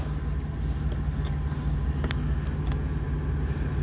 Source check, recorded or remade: recorded